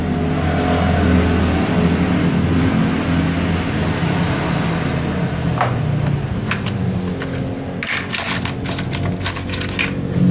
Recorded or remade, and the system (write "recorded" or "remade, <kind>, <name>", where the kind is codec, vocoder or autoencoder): recorded